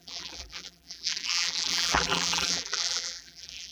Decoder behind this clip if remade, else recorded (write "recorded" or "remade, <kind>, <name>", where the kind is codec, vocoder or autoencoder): remade, vocoder, BigVGAN v2